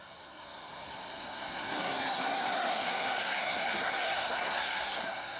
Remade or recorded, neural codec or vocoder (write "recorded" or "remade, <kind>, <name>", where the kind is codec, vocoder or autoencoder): remade, codec, SNAC